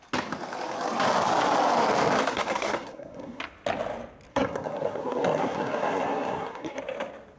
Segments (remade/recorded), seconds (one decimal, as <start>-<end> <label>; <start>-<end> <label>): 0.0-2.3 recorded; 2.3-3.4 remade; 3.4-4.3 recorded; 4.3-6.8 remade; 6.8-7.4 recorded